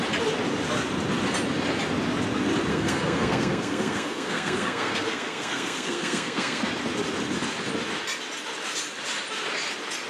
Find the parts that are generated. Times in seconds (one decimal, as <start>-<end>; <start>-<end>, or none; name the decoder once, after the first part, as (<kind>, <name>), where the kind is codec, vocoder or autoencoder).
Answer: 2.7-6.7 (codec, SNAC)